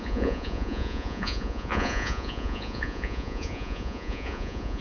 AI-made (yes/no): yes